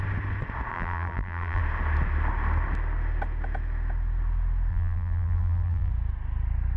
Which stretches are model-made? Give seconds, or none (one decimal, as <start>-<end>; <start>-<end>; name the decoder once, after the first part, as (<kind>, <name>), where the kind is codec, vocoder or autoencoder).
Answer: 0.7-1.6 (vocoder, BigVGAN v2); 4.7-5.9